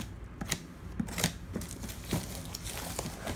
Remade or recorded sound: recorded